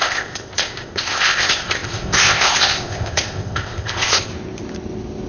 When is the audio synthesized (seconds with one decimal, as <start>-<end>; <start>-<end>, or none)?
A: 0.0-4.3